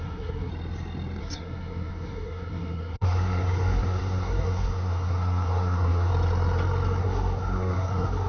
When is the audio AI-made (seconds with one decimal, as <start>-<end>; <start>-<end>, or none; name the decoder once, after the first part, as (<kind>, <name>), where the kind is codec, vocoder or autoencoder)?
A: 0.0-0.5 (codec, SNAC); 1.2-6.1; 7.0-8.3